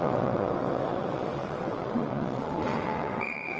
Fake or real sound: fake